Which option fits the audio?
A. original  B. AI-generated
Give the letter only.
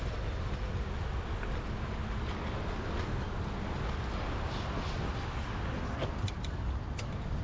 A